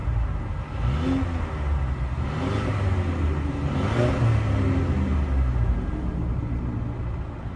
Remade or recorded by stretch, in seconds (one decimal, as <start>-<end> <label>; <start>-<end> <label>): 0.0-7.6 recorded